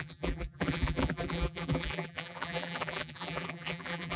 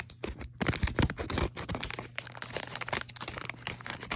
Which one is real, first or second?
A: second